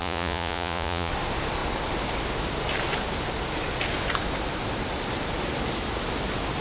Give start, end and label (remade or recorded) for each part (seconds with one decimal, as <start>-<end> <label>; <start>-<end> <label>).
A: 0.0-1.1 remade; 1.1-6.6 recorded